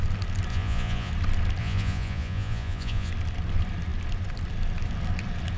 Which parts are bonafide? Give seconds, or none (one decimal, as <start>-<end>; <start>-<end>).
0.0-0.5; 1.1-1.6; 3.1-5.6